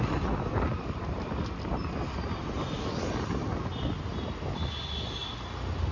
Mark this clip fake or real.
real